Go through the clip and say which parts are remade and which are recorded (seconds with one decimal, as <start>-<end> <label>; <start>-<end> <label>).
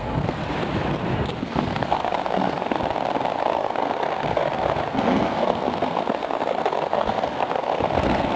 0.0-0.4 remade; 0.4-1.4 recorded; 1.4-2.8 remade; 2.8-3.4 recorded; 3.4-8.4 remade